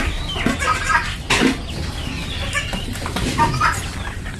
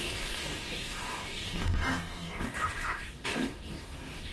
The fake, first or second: second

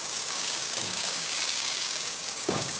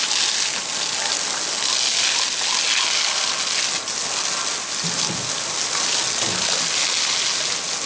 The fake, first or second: first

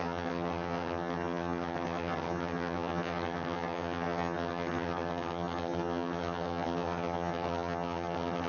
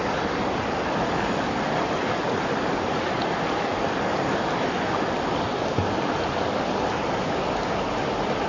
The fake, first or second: first